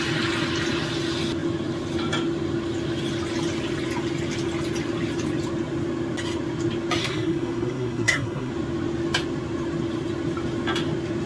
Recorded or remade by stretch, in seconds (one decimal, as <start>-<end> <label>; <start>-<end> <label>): 0.0-7.0 recorded; 7.0-8.5 remade; 8.5-11.3 recorded